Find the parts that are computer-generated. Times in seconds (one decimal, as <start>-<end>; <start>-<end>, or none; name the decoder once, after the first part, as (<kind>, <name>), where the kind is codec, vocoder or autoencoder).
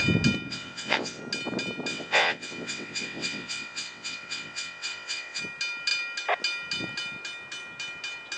0.5-1.2 (vocoder, WaveNeXt); 1.9-5.4